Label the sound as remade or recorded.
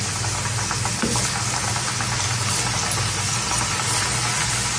recorded